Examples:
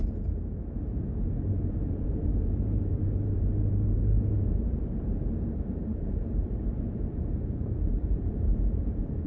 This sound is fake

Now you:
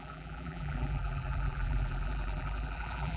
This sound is fake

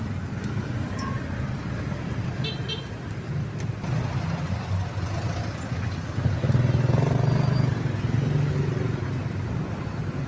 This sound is real